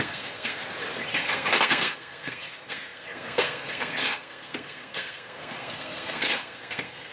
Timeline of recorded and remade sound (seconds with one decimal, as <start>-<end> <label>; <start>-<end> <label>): 0.0-0.6 remade; 0.6-1.1 recorded; 1.1-7.1 remade